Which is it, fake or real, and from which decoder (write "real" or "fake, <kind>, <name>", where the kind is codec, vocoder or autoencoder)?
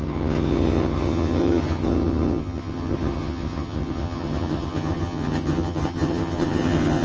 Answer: fake, vocoder, HiFi-GAN